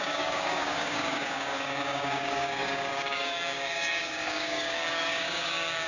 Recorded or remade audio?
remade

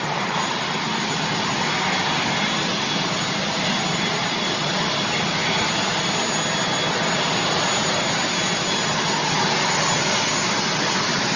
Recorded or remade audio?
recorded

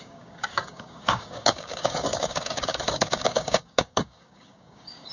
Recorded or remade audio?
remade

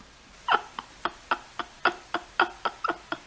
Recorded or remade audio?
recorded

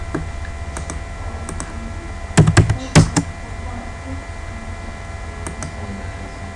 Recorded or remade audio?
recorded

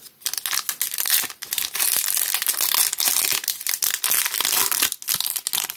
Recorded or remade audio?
recorded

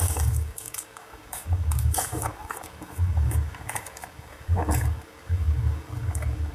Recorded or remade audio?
remade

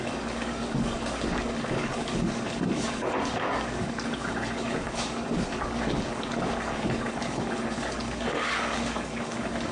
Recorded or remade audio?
remade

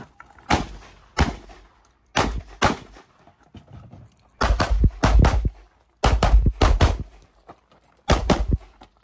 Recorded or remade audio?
recorded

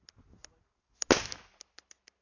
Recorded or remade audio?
recorded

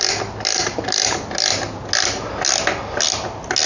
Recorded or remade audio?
recorded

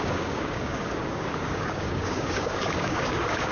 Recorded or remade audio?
remade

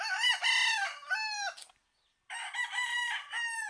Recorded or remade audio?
recorded